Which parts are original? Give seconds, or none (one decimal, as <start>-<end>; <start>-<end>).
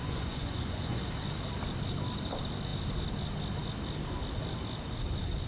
1.0-5.5